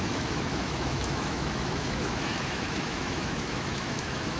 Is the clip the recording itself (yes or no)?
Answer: no